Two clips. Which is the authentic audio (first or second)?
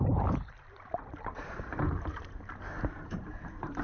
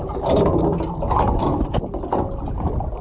second